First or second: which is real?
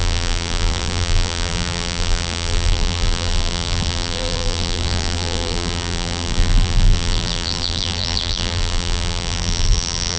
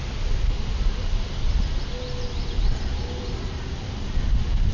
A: second